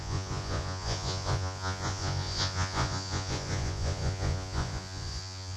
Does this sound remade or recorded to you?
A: remade